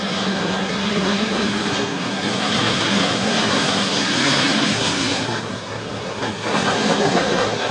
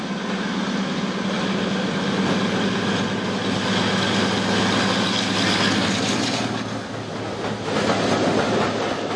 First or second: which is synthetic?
first